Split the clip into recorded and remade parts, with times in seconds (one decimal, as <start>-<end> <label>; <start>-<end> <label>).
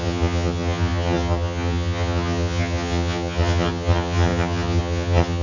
0.0-5.4 remade